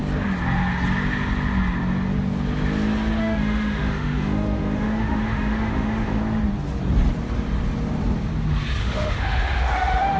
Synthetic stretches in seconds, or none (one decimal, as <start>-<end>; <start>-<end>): 3.2-6.2; 8.8-10.2